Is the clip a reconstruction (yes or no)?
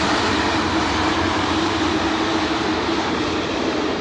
yes